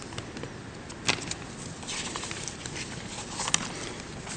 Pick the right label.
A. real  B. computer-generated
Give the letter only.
A